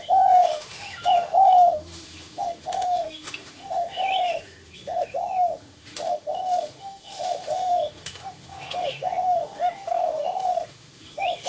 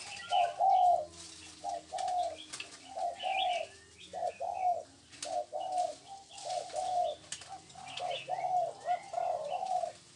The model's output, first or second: first